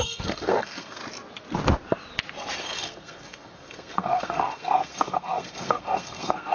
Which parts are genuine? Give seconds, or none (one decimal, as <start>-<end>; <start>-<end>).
1.0-2.6